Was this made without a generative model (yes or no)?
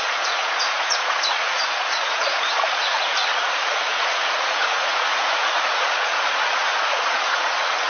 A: no